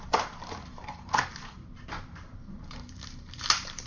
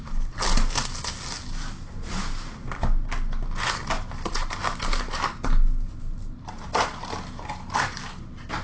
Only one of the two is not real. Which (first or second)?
first